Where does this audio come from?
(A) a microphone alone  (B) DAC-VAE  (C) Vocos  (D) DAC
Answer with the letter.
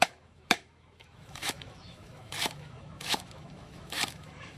B